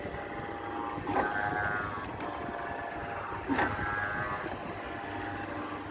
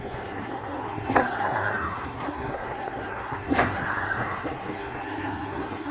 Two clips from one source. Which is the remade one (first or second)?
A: second